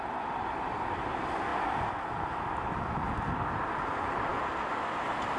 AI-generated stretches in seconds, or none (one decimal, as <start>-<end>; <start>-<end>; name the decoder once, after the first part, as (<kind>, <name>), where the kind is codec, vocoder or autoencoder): none